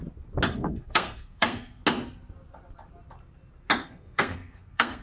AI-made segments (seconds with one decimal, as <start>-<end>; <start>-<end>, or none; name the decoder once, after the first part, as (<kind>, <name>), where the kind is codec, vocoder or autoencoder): 0.5-1.8 (codec, SNAC); 3.8-5.0